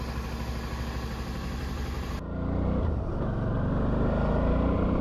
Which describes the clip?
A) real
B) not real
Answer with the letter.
A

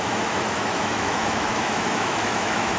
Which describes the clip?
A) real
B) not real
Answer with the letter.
B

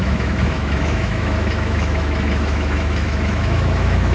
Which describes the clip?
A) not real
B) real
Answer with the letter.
A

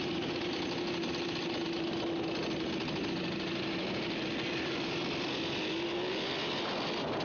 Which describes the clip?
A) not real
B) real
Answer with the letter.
B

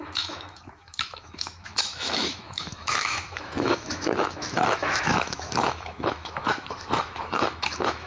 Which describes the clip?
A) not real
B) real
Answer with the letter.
A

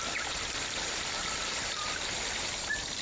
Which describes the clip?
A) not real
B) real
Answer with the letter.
B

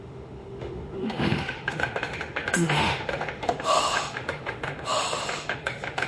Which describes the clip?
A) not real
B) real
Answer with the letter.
A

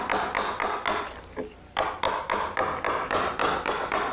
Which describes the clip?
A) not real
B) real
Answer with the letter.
B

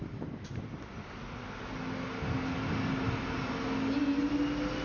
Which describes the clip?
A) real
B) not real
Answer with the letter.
A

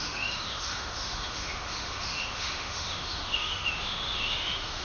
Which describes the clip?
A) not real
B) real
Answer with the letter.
A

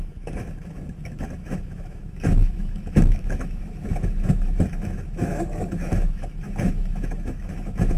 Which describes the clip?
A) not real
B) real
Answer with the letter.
A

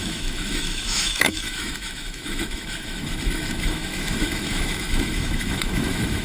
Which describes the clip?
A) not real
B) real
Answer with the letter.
A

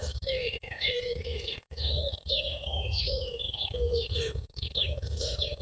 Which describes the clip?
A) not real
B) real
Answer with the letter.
A